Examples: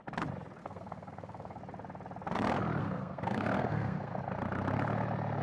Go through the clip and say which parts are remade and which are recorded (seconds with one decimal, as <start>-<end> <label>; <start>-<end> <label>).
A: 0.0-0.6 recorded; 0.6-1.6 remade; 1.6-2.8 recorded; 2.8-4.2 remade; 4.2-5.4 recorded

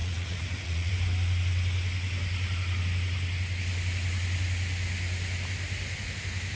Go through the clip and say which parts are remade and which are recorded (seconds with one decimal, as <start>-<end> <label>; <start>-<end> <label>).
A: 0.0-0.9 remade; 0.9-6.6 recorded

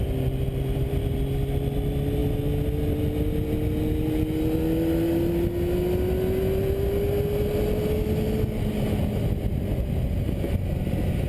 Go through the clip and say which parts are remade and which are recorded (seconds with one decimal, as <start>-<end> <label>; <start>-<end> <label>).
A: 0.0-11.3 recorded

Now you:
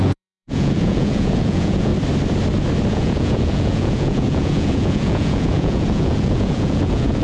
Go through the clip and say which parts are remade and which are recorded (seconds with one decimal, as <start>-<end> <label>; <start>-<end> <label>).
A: 0.0-1.9 remade; 1.9-2.9 recorded; 2.9-7.2 remade

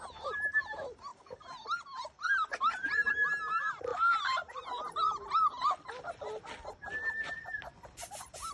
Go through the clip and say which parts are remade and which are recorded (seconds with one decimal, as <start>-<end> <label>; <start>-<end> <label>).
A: 0.0-8.5 recorded

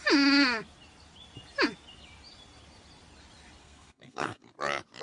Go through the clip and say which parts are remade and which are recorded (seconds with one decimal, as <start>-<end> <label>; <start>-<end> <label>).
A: 0.0-3.6 recorded; 3.6-4.5 remade; 4.5-5.0 recorded

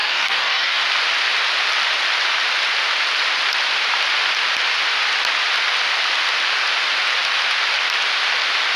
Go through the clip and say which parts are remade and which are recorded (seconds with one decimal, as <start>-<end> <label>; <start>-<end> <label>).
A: 0.0-0.8 remade; 0.8-8.8 recorded

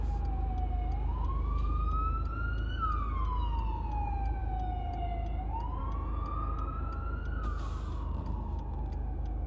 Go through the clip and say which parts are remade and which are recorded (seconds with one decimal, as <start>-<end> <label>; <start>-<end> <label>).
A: 0.0-9.5 recorded